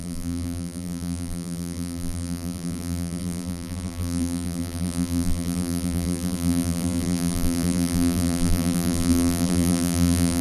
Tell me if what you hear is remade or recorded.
remade